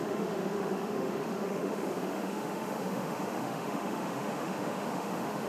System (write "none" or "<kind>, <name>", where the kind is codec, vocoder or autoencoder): autoencoder, DAC-VAE